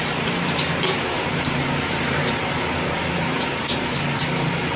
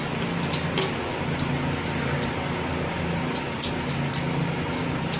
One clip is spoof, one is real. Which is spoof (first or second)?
first